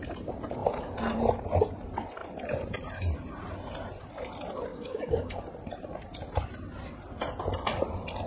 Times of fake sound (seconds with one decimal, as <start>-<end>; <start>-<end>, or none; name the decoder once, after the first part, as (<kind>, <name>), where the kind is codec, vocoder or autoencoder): 4.7-5.4 (codec, DAC)